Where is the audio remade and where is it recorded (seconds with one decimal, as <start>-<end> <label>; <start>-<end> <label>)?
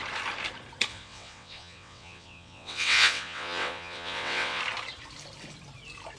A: 0.0-0.9 recorded; 0.9-4.6 remade; 4.6-6.2 recorded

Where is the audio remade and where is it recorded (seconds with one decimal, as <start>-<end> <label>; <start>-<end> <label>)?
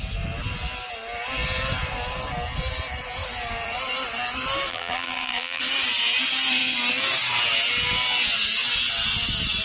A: 0.0-4.7 recorded; 4.7-5.6 remade; 5.6-9.6 recorded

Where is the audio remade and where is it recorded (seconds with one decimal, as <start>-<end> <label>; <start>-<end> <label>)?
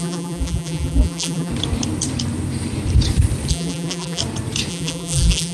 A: 0.0-1.5 remade; 1.5-3.5 recorded; 3.5-4.2 remade; 4.2-4.7 recorded; 4.7-5.5 remade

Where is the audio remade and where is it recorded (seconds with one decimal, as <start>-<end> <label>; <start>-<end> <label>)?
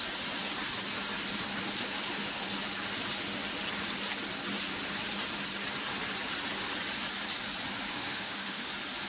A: 0.0-7.9 recorded; 7.9-8.7 remade; 8.7-9.1 recorded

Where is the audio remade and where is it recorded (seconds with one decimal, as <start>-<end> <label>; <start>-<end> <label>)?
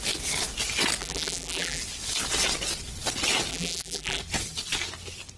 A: 0.0-1.0 recorded; 1.0-1.8 remade; 1.8-3.5 recorded; 3.5-4.2 remade; 4.2-5.4 recorded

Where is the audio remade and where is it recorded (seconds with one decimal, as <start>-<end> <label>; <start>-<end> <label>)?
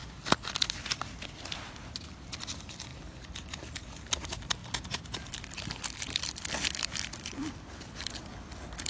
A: 0.0-2.9 recorded; 2.9-3.7 remade; 3.7-4.6 recorded; 4.6-8.1 remade; 8.1-8.9 recorded